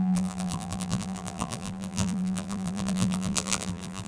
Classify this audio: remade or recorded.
remade